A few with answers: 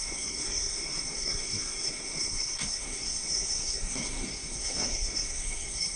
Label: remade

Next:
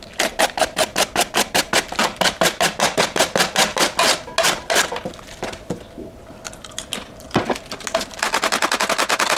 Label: recorded